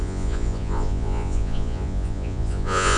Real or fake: fake